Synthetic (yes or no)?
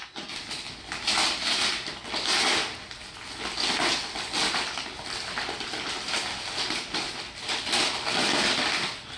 no